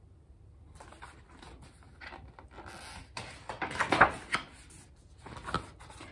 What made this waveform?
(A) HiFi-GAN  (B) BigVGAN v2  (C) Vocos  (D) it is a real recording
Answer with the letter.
D